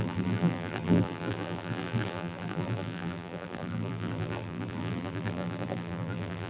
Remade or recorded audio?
remade